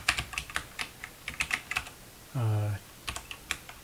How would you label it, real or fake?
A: real